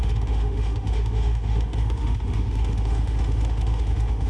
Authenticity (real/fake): fake